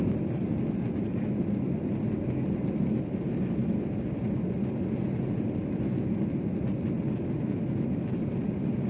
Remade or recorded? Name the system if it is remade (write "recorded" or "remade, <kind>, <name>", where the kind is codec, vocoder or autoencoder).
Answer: recorded